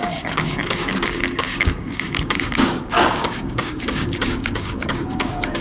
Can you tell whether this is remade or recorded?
remade